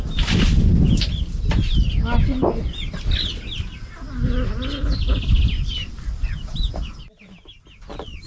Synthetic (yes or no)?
no